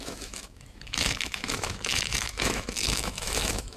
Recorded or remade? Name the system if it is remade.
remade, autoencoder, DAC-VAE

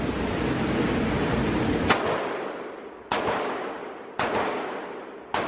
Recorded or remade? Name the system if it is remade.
recorded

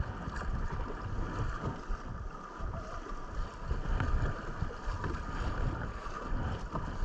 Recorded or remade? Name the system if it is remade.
recorded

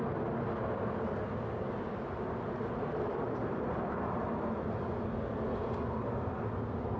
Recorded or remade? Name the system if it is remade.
recorded